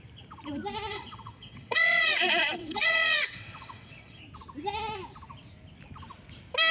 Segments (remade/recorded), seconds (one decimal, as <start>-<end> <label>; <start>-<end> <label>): 0.0-0.9 recorded; 0.9-4.2 remade; 4.2-6.7 recorded